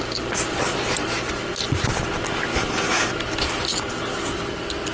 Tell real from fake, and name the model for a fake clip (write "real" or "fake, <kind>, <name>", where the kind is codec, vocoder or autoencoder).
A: real